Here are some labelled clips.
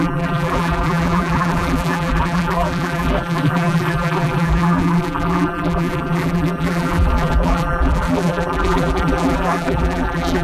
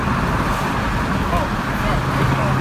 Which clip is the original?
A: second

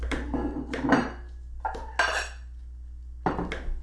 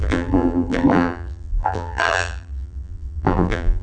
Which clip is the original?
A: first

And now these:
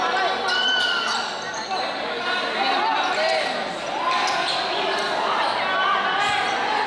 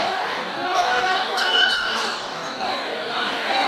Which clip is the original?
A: first